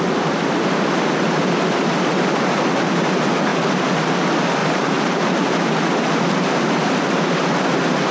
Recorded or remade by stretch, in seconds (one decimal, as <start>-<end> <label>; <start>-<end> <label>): 0.0-4.6 recorded; 4.6-5.6 remade; 5.6-8.1 recorded